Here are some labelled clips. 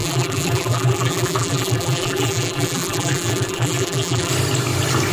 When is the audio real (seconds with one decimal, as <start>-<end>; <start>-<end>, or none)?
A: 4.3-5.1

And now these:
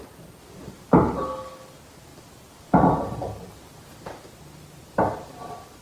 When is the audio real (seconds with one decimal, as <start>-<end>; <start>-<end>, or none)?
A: 0.0-5.8

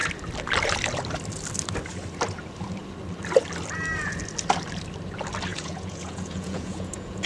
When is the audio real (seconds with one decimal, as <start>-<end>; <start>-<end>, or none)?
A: 0.0-5.5

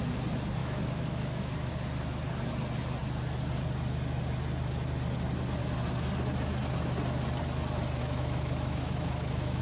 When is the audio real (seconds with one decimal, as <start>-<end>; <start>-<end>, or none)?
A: 0.0-0.6; 1.7-8.0

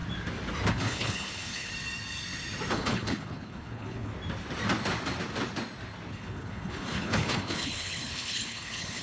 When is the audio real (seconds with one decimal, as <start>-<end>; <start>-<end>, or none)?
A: 0.0-0.7; 1.7-2.7; 4.1-6.1

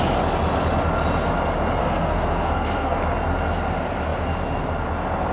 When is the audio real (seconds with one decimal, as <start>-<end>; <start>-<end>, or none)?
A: 0.0-1.8; 3.0-5.3

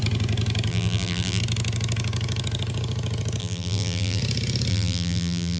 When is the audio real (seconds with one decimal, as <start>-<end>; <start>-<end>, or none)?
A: 0.0-0.7; 1.4-3.4; 4.2-4.7